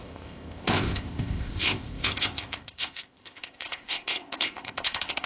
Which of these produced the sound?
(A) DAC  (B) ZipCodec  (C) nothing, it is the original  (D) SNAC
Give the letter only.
B